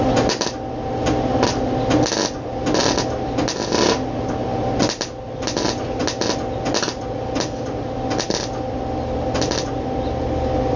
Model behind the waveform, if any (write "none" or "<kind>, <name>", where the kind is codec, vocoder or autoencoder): none